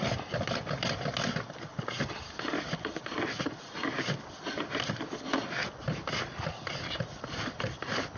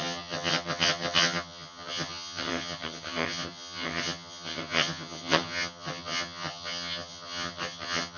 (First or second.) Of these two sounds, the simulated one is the second